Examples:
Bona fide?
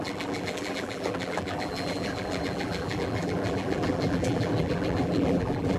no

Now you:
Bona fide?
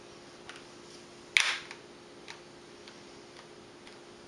yes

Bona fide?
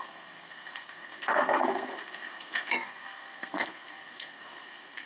no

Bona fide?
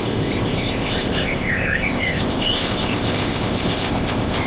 no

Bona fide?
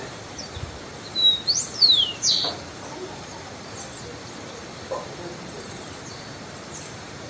no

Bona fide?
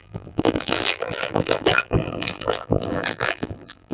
no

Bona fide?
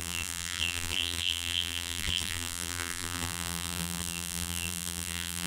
no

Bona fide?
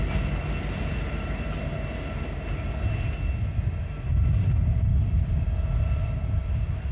yes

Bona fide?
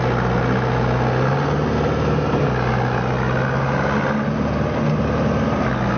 yes